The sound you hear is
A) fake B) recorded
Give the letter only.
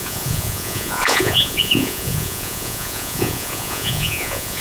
A